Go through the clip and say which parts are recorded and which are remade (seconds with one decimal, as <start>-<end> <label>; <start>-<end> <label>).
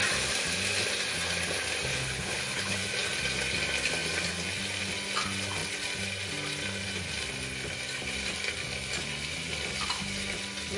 0.0-1.9 recorded; 1.9-2.8 remade; 2.8-10.8 recorded